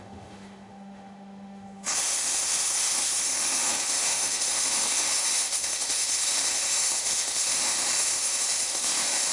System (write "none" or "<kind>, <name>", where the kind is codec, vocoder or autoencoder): autoencoder, DAC-VAE